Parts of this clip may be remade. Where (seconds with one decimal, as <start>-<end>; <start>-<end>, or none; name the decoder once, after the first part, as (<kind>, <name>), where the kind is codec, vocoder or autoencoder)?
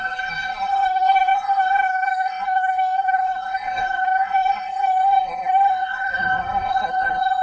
0.0-7.4 (codec, SNAC)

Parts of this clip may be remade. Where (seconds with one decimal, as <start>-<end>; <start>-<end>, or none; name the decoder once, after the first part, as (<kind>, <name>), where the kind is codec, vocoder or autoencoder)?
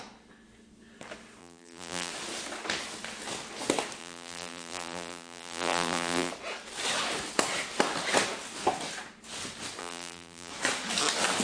1.4-2.1 (vocoder, BigVGAN v2); 4.0-6.3; 9.8-10.5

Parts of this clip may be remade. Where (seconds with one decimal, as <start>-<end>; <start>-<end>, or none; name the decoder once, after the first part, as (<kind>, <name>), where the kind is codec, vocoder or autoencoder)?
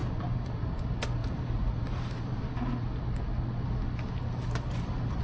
0.0-0.6 (vocoder, BigVGAN v2); 1.2-2.7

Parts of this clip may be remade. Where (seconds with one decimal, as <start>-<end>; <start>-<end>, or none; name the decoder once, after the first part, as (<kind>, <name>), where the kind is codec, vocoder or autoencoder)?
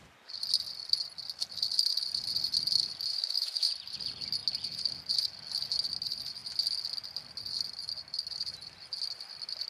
3.1-3.7 (autoencoder, DAC-VAE)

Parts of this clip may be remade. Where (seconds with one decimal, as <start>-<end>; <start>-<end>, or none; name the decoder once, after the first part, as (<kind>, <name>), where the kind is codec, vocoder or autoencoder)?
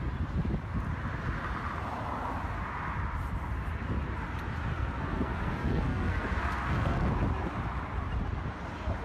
4.7-7.1 (codec, SNAC)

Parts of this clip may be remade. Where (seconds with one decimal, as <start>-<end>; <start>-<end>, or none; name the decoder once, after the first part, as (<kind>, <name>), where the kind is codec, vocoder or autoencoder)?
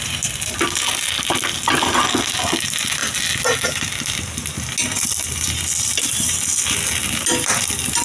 none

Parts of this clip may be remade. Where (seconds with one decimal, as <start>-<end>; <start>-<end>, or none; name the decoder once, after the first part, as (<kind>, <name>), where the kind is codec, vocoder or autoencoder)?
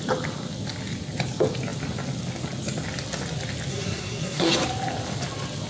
3.7-4.5 (codec, SNAC)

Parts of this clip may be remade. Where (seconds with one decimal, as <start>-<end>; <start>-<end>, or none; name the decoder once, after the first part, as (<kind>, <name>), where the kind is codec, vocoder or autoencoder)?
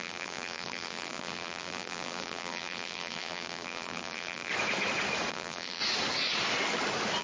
0.0-4.5 (vocoder, BigVGAN v2); 5.3-5.8